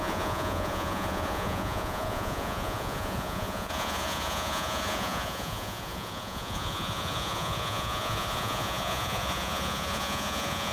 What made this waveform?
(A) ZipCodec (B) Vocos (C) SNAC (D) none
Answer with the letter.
B